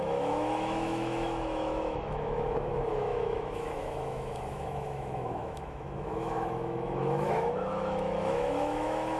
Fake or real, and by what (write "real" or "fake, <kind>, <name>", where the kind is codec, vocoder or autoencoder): fake, autoencoder, DAC-VAE